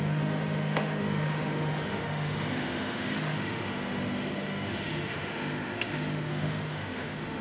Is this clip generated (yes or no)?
yes